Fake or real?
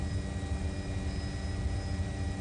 real